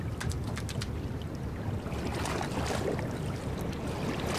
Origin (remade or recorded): recorded